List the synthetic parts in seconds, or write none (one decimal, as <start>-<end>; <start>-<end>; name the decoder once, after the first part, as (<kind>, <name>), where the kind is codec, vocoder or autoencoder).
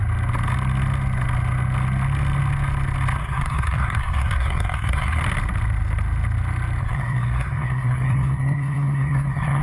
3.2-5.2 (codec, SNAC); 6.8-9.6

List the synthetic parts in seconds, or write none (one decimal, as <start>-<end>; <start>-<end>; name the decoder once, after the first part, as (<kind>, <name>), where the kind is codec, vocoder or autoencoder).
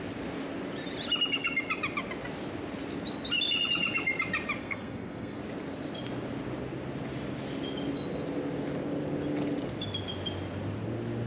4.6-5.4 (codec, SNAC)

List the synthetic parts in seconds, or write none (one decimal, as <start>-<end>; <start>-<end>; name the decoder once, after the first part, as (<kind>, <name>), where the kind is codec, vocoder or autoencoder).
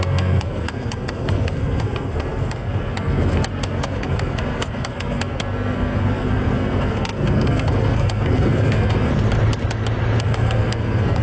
0.0-9.1 (codec, SNAC); 10.2-11.2